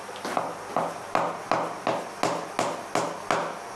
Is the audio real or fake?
real